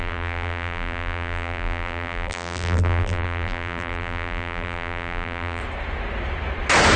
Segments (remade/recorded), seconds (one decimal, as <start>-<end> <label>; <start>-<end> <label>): 0.0-5.6 remade; 5.6-7.0 recorded